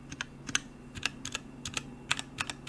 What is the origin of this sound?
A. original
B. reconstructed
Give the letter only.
A